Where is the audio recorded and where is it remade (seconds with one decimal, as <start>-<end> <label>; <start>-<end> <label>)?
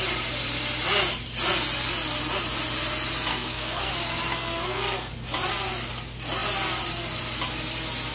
0.0-3.3 recorded; 3.3-3.9 remade; 3.9-4.3 recorded; 4.3-5.1 remade; 5.1-8.1 recorded